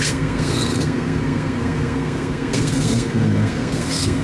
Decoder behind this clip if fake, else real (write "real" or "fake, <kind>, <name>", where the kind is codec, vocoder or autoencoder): fake, codec, SNAC